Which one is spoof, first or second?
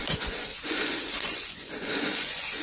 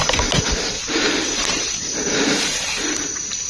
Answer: first